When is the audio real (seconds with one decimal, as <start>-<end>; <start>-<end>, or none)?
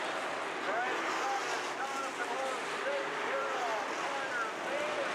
0.0-5.1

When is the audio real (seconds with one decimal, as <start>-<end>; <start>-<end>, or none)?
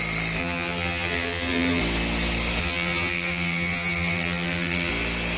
0.0-0.4; 1.8-2.6; 4.9-5.4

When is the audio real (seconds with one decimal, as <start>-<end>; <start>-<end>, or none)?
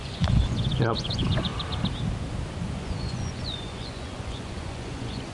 1.5-2.6